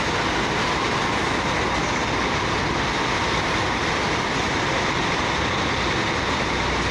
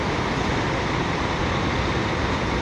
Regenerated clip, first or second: second